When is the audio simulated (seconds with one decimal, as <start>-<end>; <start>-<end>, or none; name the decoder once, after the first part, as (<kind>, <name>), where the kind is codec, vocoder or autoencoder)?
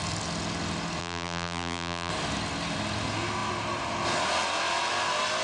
1.0-2.1 (vocoder, BigVGAN v2)